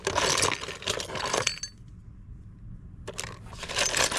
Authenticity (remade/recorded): recorded